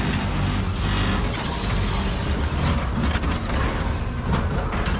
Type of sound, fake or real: real